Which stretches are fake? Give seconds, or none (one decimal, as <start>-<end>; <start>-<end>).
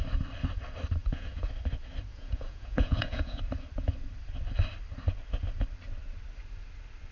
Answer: 1.0-1.5; 2.1-3.4